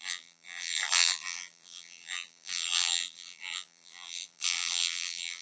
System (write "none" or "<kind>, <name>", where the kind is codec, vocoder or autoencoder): vocoder, BigVGAN v2